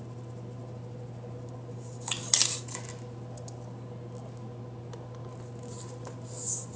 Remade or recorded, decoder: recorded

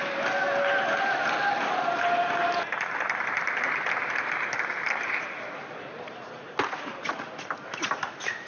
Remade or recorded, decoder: recorded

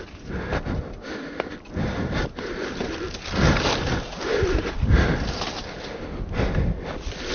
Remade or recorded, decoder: recorded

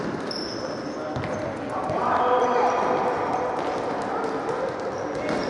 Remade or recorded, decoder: recorded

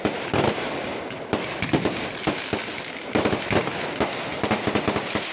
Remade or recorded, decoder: recorded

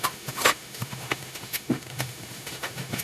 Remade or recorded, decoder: remade, autoencoder, DAC-VAE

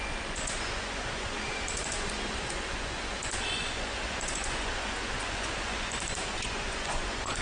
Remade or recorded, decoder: remade, vocoder, Vocos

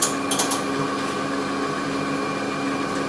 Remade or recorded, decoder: recorded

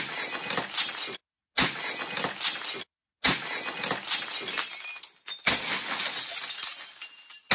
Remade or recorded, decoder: recorded